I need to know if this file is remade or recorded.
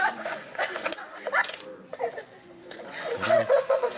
remade